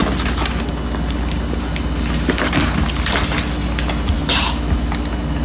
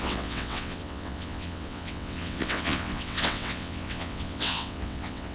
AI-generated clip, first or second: second